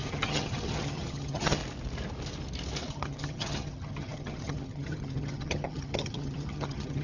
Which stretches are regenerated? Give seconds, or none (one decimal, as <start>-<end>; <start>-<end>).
0.0-1.6; 2.9-7.0